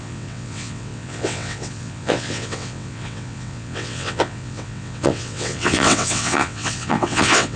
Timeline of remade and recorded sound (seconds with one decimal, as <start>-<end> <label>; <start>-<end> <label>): 0.0-7.6 remade